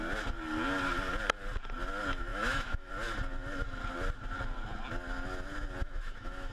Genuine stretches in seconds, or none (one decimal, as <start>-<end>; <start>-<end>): 0.0-2.3; 2.9-5.8